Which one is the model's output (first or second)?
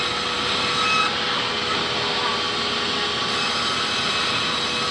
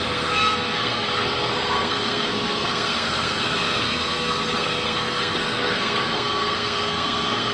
second